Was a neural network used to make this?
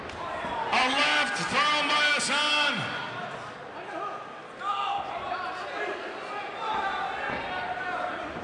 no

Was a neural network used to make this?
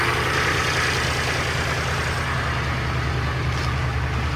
no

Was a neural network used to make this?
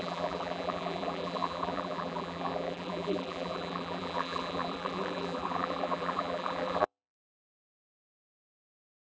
yes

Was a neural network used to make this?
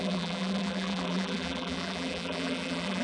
yes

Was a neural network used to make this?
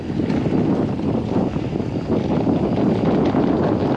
no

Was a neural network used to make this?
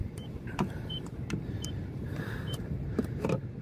yes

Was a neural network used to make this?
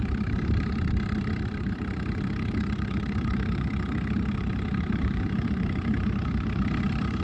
yes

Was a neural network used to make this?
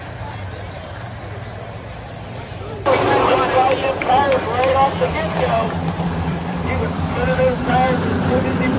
yes